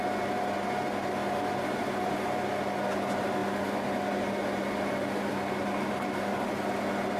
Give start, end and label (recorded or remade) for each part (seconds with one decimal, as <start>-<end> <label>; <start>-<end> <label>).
0.0-7.2 recorded